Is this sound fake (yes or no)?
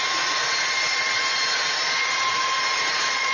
yes